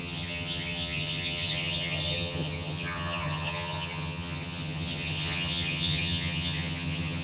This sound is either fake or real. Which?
fake